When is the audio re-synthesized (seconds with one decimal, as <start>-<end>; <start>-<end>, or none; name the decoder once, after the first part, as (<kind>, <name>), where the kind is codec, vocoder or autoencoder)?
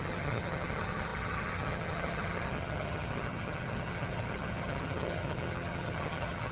0.0-6.5 (vocoder, HiFi-GAN)